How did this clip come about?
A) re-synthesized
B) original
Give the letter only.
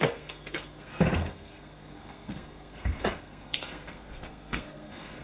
A